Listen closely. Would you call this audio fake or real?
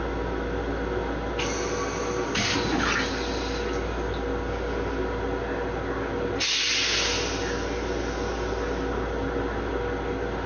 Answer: real